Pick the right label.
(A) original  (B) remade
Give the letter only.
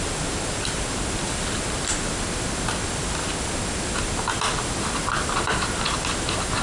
A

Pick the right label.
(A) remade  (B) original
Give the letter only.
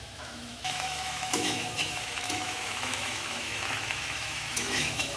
A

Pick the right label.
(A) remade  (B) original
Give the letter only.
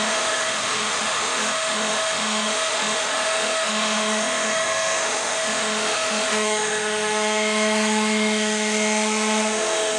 A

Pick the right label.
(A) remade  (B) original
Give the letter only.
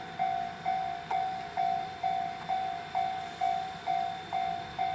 B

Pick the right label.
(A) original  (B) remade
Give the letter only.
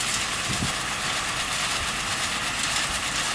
A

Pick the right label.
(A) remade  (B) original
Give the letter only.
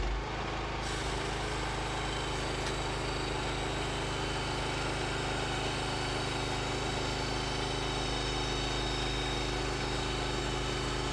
B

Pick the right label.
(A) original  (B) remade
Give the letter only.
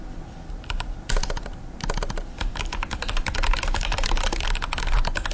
A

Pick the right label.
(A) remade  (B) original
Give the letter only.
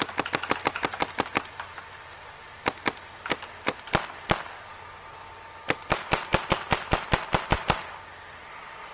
B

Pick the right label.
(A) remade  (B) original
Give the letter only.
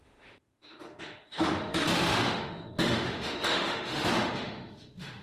A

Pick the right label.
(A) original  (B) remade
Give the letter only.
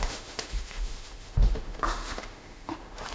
B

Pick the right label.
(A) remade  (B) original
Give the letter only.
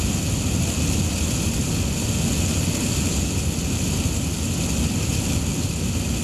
B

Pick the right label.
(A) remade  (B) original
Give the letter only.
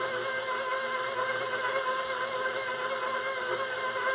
B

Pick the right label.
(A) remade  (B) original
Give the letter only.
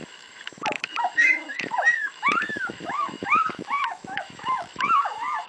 A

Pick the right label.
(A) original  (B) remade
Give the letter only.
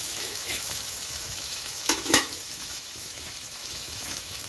B